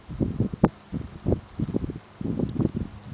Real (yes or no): yes